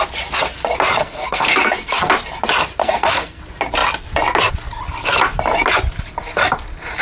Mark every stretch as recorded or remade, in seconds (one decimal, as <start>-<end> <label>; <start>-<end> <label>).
0.0-1.0 recorded; 1.0-2.1 remade; 2.1-2.8 recorded; 2.8-3.4 remade; 3.4-7.0 recorded